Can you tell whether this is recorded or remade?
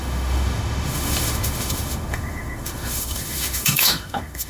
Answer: remade